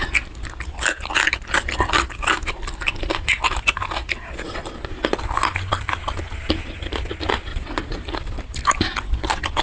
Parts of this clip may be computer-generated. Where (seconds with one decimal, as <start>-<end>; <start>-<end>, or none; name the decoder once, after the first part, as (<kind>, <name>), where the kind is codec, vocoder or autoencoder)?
7.5-8.0 (vocoder, Vocos)